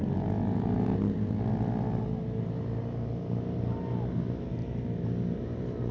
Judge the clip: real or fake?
real